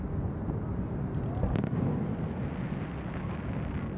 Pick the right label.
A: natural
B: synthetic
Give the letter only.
A